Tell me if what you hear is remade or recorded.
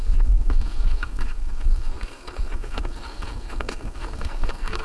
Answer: remade